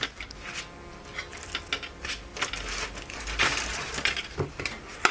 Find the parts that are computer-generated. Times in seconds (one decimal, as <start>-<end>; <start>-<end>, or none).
none